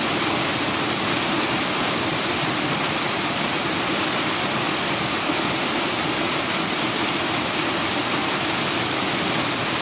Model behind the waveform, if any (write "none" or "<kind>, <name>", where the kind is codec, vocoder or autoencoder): none